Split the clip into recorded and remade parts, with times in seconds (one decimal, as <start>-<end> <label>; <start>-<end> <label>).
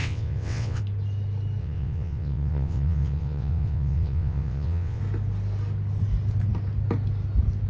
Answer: 0.0-0.8 remade; 0.8-1.6 recorded; 1.6-5.0 remade; 5.0-7.7 recorded